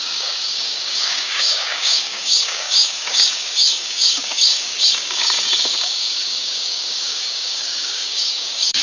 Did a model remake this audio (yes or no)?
yes